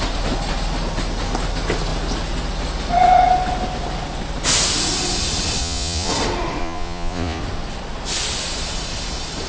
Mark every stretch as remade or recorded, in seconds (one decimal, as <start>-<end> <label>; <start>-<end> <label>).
0.0-5.6 recorded; 5.6-6.1 remade; 6.1-6.6 recorded; 6.6-7.4 remade; 7.4-9.5 recorded